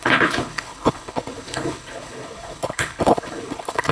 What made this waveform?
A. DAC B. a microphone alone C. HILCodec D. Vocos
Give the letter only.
C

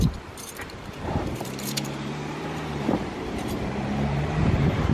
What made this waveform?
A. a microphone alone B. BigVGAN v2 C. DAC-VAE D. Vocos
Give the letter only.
B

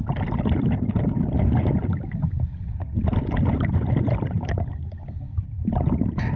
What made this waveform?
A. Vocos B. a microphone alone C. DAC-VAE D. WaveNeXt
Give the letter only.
B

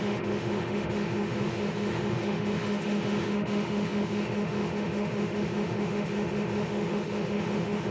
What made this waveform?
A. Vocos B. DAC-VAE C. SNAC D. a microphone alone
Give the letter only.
B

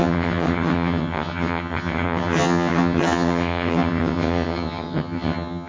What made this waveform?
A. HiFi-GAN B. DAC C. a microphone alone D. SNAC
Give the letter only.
A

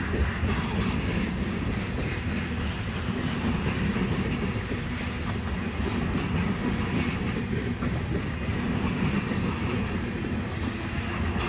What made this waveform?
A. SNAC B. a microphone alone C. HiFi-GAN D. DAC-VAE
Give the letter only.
B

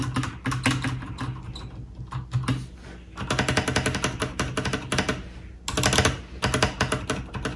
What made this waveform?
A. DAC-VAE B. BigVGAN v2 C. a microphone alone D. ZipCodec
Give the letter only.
C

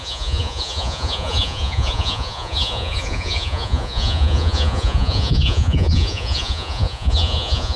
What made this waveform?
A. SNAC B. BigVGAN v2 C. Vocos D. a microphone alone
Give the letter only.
C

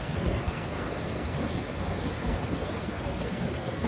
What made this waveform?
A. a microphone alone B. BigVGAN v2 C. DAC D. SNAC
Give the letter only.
D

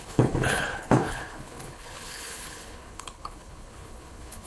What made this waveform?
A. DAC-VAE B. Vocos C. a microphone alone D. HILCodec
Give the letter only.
D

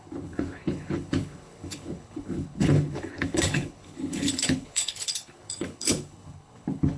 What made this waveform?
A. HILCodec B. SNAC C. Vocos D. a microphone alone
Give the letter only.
A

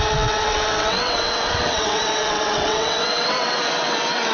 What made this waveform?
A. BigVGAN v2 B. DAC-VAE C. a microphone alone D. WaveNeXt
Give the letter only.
D